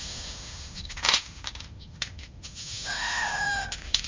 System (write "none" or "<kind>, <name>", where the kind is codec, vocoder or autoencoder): autoencoder, DAC-VAE